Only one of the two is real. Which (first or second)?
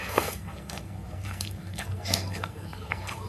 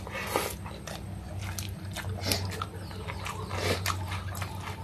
second